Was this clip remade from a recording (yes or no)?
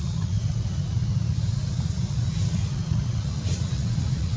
yes